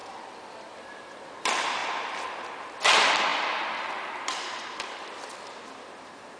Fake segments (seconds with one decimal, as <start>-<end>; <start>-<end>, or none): 0.0-1.3; 3.3-5.9